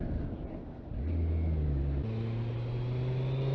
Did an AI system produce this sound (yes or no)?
no